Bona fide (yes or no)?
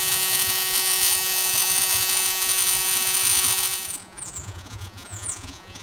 no